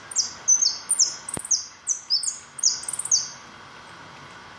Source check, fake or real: real